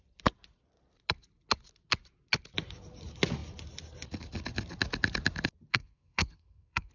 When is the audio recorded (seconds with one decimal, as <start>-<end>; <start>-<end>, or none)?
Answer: 0.0-5.7